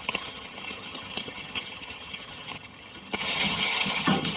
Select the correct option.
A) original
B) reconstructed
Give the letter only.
B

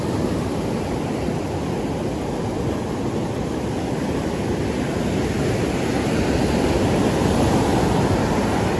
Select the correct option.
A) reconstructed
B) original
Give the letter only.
B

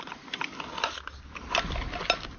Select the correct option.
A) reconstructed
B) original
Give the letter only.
B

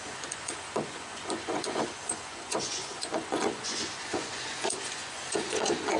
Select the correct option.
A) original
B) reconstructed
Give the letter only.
B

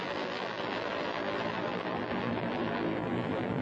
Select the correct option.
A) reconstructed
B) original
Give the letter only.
A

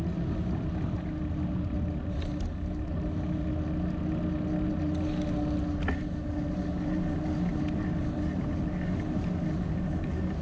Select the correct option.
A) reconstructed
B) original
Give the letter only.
B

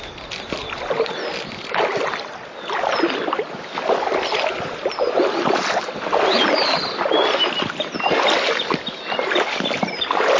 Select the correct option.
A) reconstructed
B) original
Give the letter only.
B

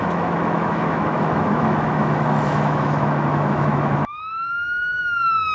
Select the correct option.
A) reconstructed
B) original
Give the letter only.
A